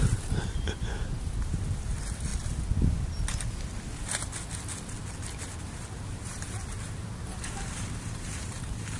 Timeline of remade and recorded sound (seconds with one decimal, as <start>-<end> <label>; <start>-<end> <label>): 0.0-2.3 remade; 2.3-5.6 recorded; 5.6-9.0 remade